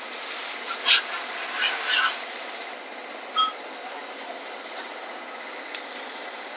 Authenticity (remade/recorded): recorded